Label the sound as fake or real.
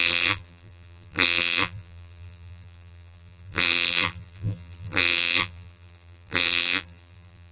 fake